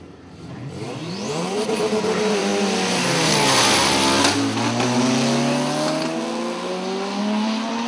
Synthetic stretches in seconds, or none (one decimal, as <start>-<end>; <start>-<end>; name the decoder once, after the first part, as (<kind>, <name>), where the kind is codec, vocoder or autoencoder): 0.0-2.5 (vocoder, BigVGAN v2); 7.2-7.9